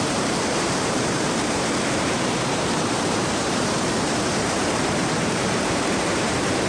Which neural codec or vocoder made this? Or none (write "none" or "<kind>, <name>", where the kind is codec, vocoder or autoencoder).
vocoder, BigVGAN v2